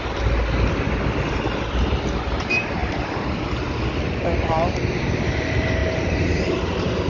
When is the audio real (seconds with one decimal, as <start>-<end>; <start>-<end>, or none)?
0.0-2.8; 3.4-5.8; 6.4-7.1